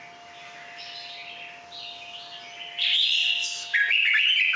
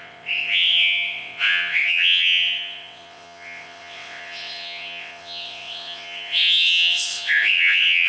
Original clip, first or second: first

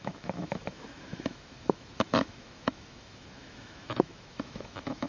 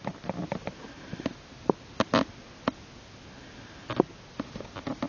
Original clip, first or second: second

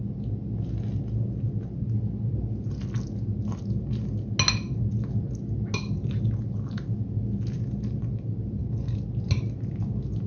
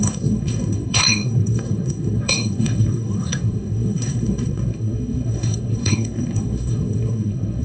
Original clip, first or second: first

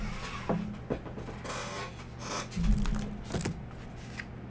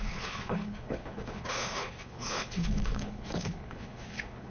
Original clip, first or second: first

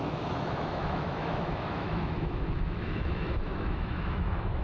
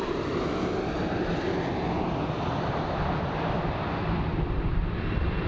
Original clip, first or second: second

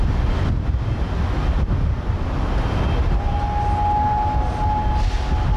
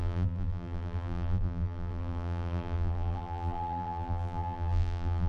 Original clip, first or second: first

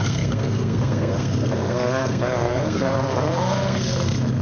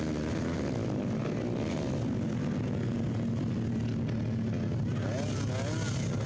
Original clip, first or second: second